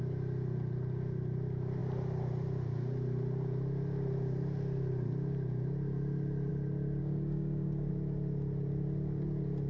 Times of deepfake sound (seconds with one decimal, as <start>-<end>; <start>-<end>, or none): 7.0-7.9